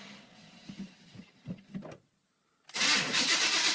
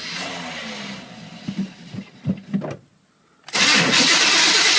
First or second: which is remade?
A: first